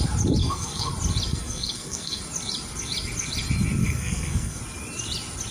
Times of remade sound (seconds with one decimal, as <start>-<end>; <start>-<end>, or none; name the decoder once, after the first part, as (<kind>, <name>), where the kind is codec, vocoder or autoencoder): 0.4-0.9 (codec, SNAC); 1.3-2.2; 3.8-4.6